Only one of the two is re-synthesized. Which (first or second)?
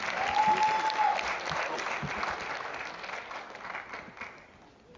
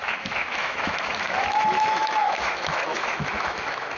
second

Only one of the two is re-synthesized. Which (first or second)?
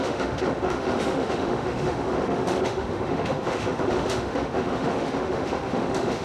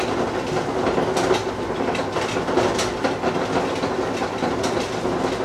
first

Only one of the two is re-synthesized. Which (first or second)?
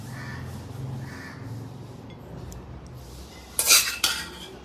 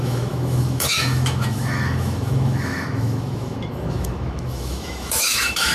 second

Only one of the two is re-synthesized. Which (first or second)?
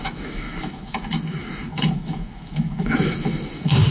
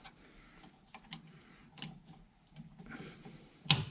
first